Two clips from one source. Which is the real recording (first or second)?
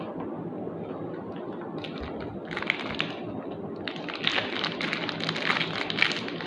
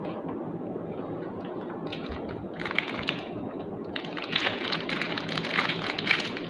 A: first